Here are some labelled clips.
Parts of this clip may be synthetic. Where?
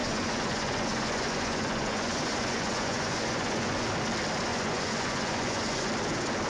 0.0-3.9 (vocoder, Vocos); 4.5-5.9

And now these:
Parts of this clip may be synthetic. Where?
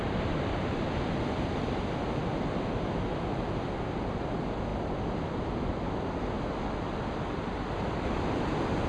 none